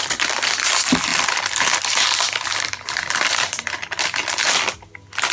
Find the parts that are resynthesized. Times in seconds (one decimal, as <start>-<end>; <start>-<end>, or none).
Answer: 1.1-4.3